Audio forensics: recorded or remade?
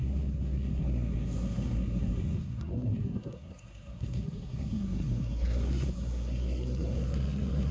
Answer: remade